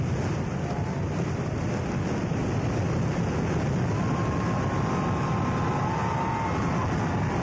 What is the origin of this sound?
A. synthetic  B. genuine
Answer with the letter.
B